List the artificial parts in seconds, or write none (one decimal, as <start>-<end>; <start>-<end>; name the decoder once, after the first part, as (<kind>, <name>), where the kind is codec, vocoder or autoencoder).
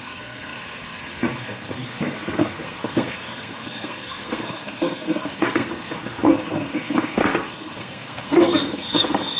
0.0-9.4 (codec, SNAC)